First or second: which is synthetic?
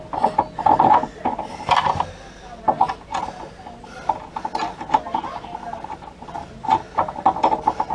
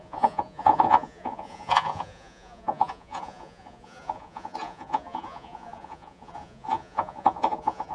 second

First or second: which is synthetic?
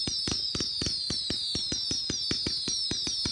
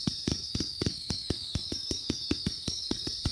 second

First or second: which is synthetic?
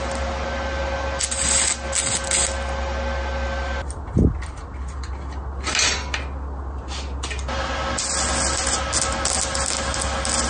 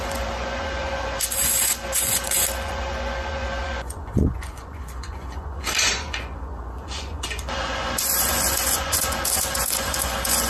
second